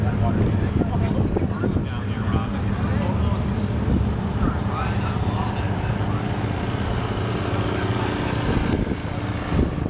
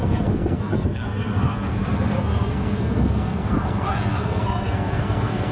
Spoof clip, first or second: second